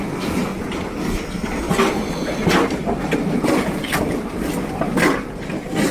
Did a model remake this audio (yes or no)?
no